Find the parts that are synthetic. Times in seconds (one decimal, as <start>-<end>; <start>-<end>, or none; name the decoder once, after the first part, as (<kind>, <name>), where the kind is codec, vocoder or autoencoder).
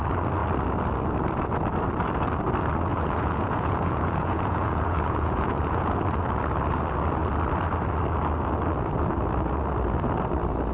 2.9-5.9 (vocoder, Vocos)